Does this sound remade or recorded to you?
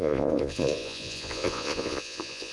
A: remade